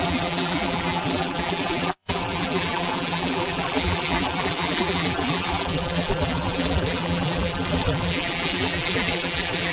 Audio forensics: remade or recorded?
remade